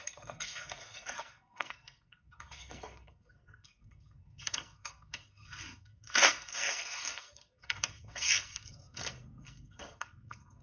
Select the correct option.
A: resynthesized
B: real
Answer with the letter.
A